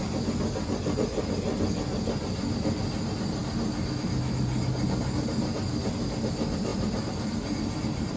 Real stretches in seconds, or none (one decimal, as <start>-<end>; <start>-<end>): 0.0-8.2